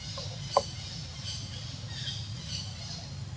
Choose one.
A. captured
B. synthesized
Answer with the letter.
A